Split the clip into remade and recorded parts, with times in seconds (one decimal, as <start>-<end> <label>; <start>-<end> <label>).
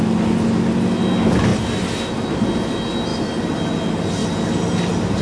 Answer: 0.0-5.2 recorded